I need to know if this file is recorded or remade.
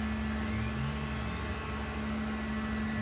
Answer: recorded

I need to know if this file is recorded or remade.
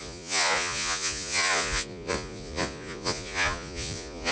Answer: remade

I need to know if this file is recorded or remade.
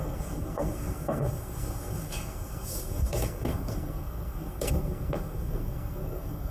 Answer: remade